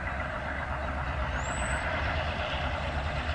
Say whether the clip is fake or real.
fake